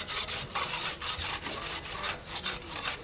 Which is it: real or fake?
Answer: real